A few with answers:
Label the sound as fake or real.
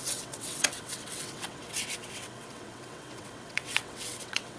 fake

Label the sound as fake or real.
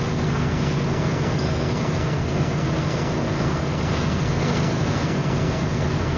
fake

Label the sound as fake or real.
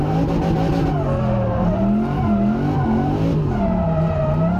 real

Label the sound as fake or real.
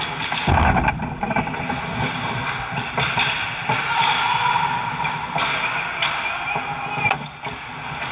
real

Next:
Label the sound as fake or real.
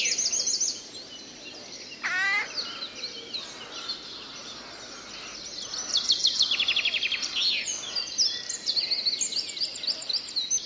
real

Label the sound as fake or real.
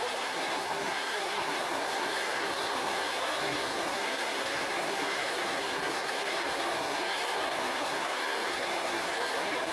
fake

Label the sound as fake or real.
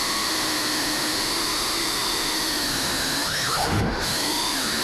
fake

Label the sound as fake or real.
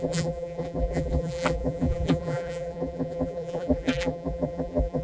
fake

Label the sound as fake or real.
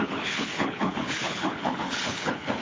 fake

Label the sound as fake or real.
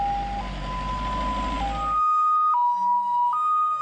real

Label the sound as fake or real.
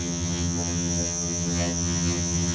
fake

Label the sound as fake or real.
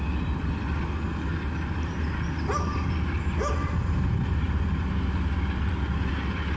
real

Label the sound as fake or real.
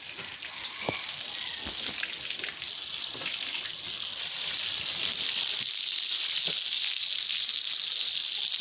real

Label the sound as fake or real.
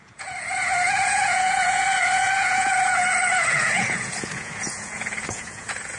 fake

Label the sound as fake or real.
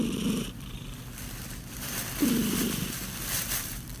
fake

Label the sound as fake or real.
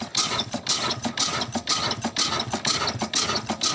real